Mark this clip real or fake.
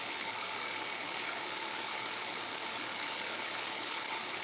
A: fake